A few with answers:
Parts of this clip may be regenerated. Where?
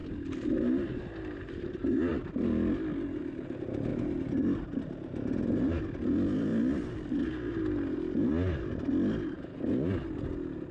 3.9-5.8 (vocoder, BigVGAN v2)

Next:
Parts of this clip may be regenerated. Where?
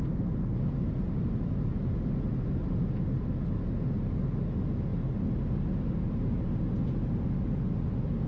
none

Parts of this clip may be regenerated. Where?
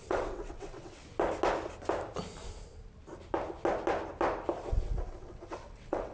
0.0-1.0 (vocoder, WaveNeXt); 4.7-6.1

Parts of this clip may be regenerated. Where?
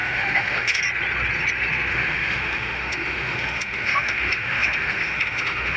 0.0-0.8 (autoencoder, DAC-VAE); 1.9-5.8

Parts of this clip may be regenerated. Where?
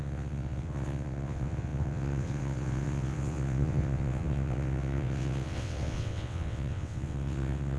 0.0-7.8 (vocoder, WaveNeXt)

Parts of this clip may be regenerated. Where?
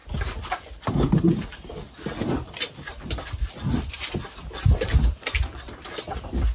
none